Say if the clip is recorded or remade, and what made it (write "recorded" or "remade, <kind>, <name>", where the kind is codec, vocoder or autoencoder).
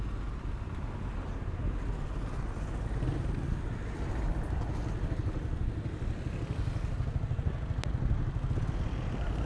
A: recorded